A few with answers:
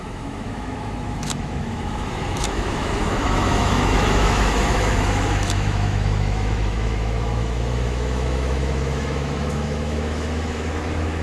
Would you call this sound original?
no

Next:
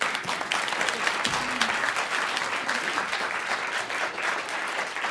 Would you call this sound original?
yes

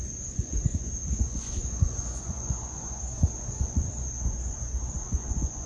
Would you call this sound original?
no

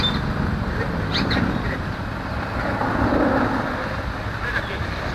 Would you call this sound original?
yes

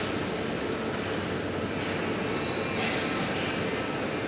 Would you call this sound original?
yes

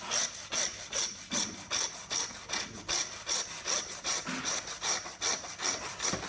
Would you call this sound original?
yes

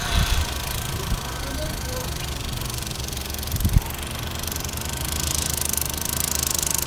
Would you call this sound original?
yes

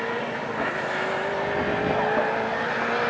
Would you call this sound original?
yes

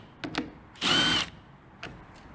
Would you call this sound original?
yes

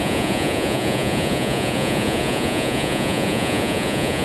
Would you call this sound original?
no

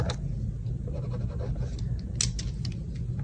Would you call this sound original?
yes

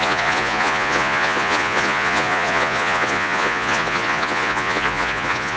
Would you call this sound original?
no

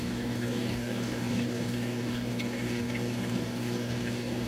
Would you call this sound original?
no